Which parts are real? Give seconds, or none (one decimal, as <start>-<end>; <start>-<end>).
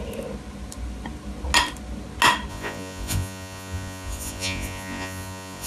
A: 0.0-2.5